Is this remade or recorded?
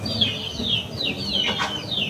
recorded